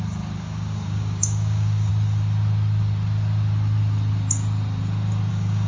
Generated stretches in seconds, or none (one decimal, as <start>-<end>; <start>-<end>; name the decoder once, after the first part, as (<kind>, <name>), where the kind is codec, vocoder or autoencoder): 0.0-1.9 (codec, DAC); 5.3-5.7